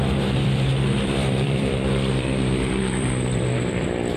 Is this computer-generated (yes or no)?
yes